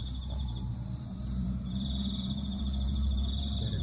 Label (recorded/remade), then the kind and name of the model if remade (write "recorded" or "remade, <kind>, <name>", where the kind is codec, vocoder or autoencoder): remade, vocoder, BigVGAN v2